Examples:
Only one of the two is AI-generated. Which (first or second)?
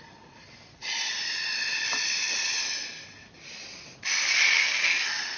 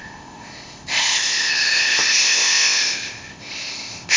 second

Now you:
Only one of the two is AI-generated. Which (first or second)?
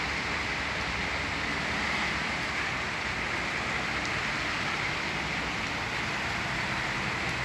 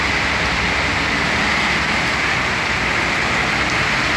first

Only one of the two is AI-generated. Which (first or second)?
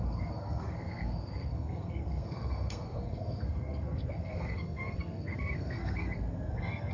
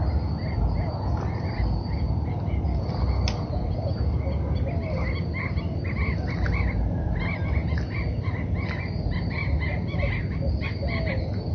first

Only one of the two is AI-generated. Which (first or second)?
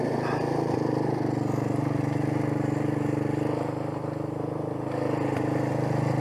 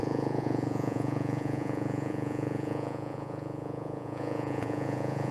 second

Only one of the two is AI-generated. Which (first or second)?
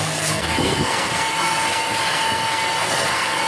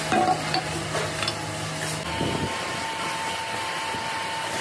first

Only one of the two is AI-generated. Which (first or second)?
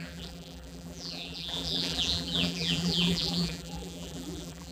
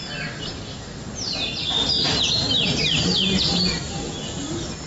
first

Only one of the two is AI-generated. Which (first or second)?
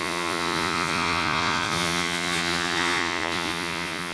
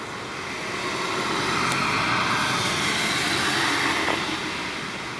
first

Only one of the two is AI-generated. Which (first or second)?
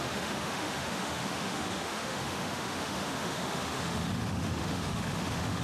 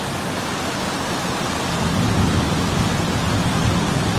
first